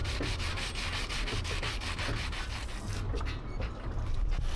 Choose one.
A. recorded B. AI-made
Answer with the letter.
A